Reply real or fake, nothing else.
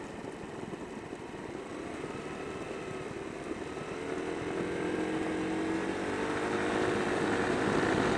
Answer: real